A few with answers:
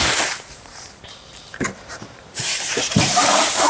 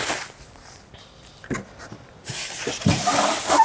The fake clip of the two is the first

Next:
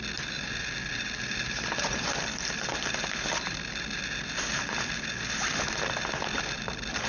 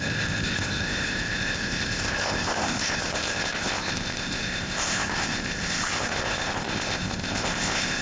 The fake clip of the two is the second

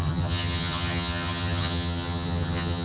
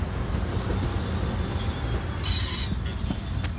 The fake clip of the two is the first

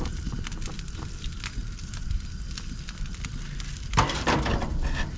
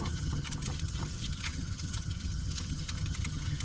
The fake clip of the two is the second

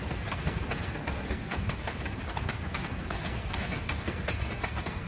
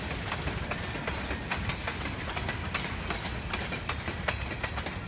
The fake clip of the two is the first